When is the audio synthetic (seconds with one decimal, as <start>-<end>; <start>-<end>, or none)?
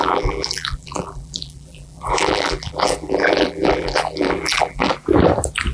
0.0-4.9